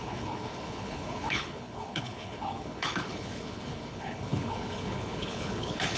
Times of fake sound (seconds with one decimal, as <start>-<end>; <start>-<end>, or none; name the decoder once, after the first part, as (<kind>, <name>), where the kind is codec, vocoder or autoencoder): 0.0-6.0 (codec, HILCodec)